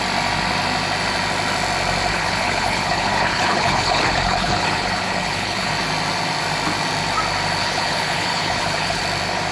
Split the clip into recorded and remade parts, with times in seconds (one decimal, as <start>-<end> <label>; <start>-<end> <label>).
0.0-2.1 recorded; 2.1-5.7 remade; 5.7-7.6 recorded; 7.6-9.0 remade; 9.0-9.5 recorded